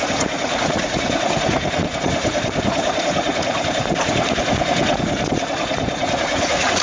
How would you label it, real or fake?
fake